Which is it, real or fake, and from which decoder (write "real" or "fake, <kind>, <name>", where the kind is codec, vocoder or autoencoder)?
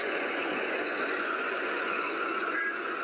fake, vocoder, Vocos